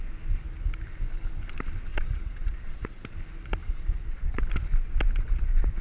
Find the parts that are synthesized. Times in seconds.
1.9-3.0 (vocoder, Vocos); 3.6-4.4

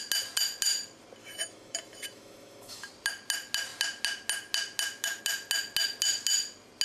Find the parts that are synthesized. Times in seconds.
1.2-2.9 (autoencoder, DAC-VAE)

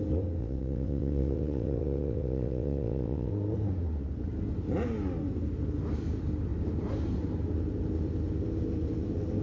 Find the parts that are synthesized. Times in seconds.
0.4-3.3 (vocoder, WaveNeXt)

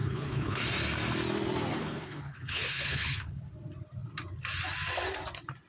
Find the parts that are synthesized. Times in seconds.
0.0-0.6 (codec, HILCodec); 1.7-3.5

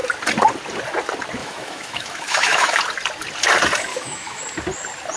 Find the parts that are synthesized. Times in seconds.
1.4-2.8 (autoencoder, DAC-VAE); 3.9-4.4

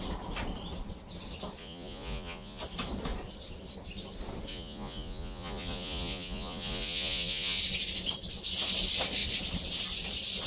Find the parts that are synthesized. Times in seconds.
1.6-2.6 (vocoder, Vocos); 4.5-7.6

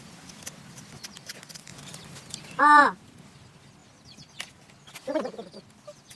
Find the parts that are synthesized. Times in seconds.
none